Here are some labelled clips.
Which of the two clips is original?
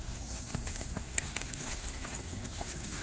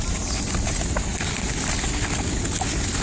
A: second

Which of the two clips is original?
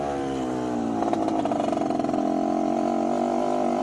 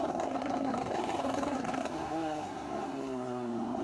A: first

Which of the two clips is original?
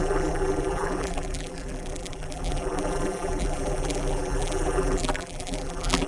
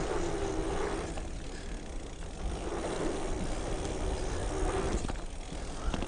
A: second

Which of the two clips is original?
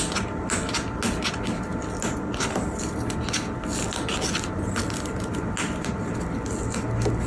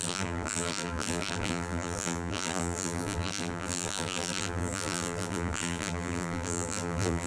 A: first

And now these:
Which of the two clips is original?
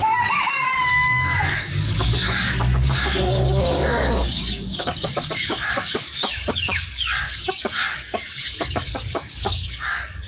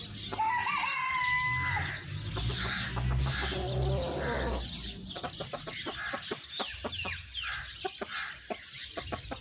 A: second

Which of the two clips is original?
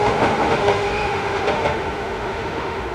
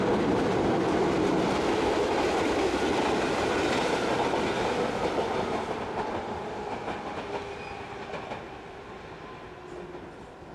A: second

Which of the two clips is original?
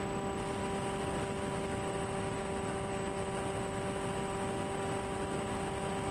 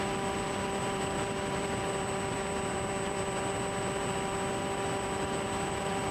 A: first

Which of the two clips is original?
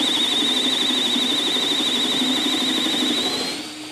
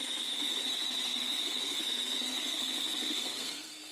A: first